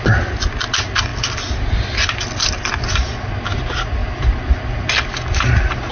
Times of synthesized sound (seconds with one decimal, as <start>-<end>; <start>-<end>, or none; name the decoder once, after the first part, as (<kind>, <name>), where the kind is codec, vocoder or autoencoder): none